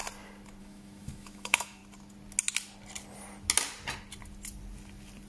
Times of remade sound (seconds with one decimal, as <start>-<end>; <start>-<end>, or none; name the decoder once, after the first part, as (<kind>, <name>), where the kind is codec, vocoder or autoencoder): 0.6-1.8 (autoencoder, DAC-VAE)